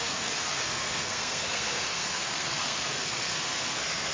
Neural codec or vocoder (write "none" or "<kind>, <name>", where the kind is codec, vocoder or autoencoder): codec, SNAC